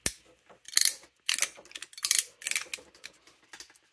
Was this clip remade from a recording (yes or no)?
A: no